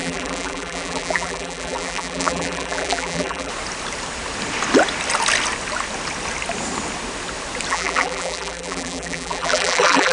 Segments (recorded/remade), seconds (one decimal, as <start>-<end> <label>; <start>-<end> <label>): 0.0-3.5 remade; 3.5-7.7 recorded; 7.7-10.1 remade